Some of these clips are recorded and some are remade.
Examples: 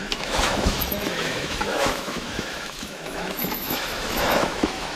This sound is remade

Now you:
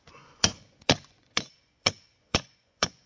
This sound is remade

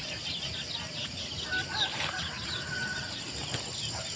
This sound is recorded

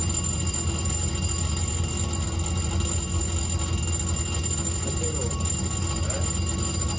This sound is recorded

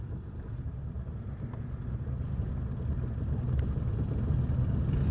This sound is recorded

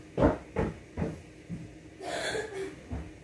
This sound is recorded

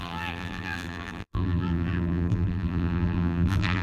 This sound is remade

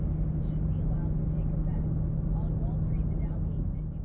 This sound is recorded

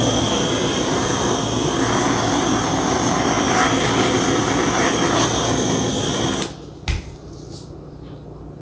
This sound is recorded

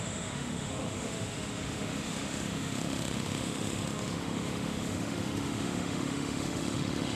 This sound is remade